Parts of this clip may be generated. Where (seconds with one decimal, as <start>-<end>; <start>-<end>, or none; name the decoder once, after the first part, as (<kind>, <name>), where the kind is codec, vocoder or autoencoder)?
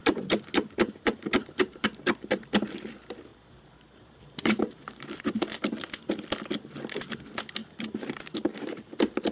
1.4-1.9 (vocoder, BigVGAN v2); 3.3-5.2; 7.6-8.9